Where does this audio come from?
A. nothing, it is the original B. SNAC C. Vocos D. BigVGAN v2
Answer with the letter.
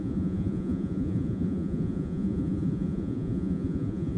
C